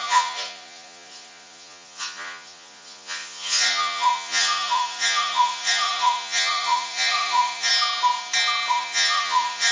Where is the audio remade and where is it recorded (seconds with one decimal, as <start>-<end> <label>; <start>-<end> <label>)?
0.0-7.7 remade; 7.7-8.7 recorded; 8.7-9.7 remade